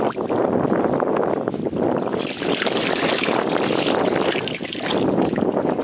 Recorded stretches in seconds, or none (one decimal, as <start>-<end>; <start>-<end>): 0.0-5.8